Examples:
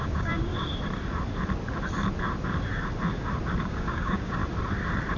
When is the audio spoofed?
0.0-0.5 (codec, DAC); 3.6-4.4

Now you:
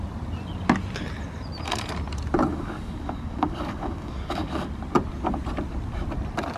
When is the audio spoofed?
2.5-4.7 (codec, DAC)

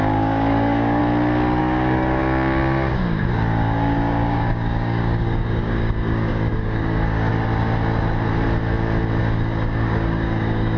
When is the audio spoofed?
0.0-1.0 (codec, DAC); 1.6-7.3; 9.2-10.8

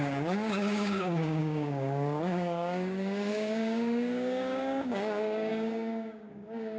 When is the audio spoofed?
0.0-6.8 (codec, DAC)